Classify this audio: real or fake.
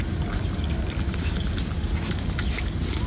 real